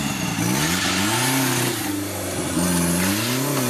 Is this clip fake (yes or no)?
no